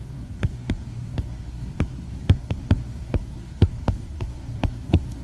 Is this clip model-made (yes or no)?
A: yes